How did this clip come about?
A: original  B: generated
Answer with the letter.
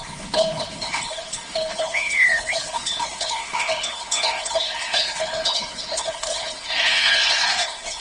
B